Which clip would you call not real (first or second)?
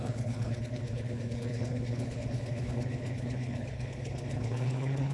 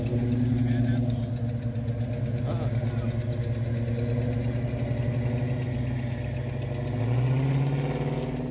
first